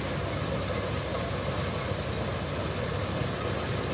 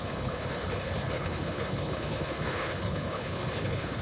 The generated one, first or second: second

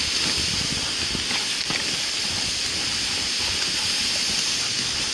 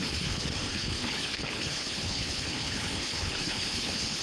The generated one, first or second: second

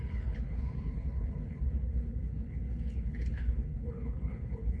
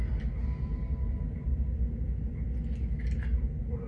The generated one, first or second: first